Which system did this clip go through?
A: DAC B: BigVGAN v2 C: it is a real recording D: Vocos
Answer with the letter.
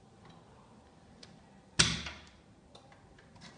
C